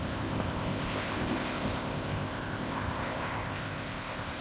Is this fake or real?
fake